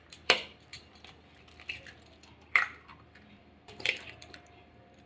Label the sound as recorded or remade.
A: remade